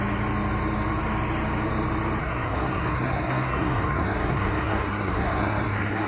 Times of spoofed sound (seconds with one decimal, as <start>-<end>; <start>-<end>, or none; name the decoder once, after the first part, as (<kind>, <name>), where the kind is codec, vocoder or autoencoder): 2.2-6.1 (codec, SNAC)

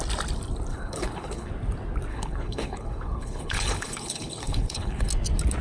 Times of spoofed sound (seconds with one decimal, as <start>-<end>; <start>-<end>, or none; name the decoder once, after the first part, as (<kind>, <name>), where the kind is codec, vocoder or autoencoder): 0.7-1.5 (codec, HILCodec); 2.1-5.1

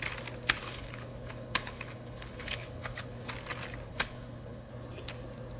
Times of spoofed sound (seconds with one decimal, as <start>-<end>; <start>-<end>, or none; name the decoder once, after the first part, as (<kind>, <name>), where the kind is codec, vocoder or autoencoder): 0.6-3.3 (codec, HILCodec); 3.9-4.7

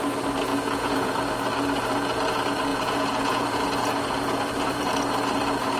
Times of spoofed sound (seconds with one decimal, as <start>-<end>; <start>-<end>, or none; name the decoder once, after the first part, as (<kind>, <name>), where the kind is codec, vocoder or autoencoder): 0.5-1.1 (vocoder, Vocos); 2.7-4.9

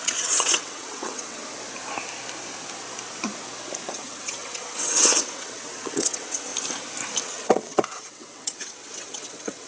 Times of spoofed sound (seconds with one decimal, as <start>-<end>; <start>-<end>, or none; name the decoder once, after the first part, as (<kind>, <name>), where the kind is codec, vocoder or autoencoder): 0.0-1.4 (vocoder, WaveNeXt); 3.9-6.5; 7.2-9.7

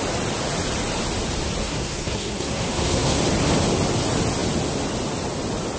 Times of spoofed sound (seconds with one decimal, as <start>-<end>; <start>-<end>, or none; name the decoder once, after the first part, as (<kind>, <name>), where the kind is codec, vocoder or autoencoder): 1.6-3.2 (codec, SNAC)